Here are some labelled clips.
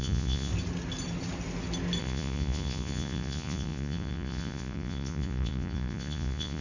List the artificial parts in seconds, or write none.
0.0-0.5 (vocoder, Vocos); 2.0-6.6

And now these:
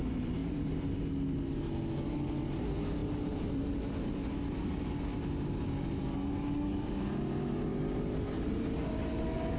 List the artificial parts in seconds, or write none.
0.4-1.1 (vocoder, BigVGAN v2); 3.0-3.5; 7.7-9.2